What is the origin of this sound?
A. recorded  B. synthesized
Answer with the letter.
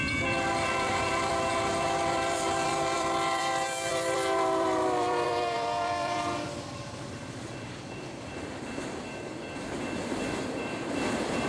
B